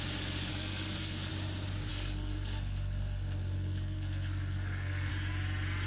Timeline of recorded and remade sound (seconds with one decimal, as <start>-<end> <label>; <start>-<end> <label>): 0.0-0.5 recorded; 0.5-1.3 remade; 1.3-1.9 recorded; 1.9-5.1 remade; 5.1-5.9 recorded